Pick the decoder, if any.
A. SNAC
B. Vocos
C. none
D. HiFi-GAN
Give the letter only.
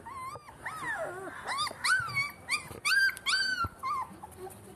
C